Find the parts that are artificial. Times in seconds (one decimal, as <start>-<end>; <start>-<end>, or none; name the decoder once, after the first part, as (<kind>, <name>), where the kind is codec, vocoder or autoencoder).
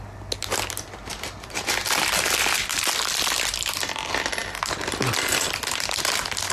1.8-3.1 (vocoder, BigVGAN v2); 4.4-5.7